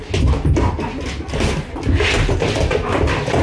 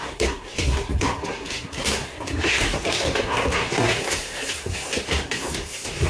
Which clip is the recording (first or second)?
first